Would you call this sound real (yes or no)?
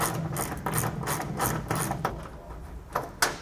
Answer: yes